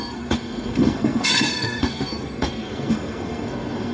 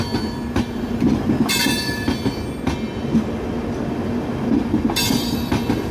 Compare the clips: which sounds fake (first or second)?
first